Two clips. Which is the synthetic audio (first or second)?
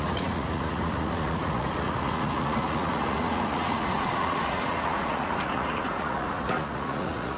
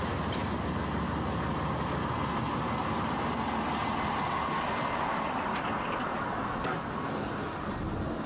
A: first